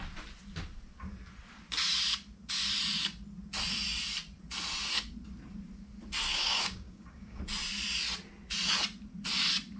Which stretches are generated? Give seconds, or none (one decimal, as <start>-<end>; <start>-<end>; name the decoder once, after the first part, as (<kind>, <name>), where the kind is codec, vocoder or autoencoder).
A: 6.3-7.4 (codec, DAC)